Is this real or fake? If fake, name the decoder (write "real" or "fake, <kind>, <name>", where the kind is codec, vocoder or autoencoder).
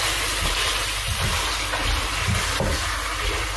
real